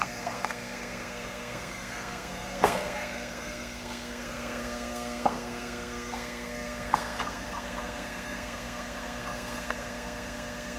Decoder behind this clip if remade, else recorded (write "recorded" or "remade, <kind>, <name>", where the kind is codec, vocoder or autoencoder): remade, codec, SNAC